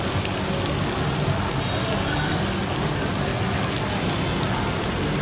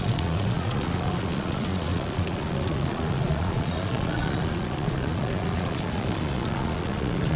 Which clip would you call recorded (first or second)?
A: first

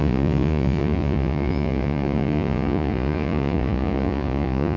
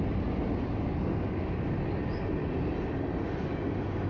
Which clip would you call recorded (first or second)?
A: second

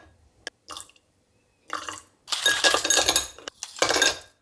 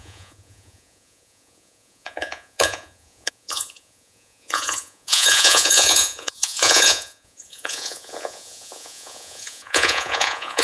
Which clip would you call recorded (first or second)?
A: first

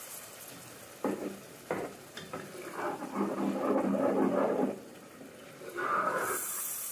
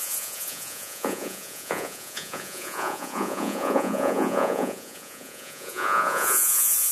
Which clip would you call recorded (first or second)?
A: first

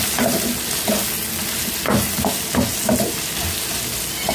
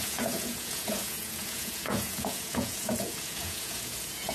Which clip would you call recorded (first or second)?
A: first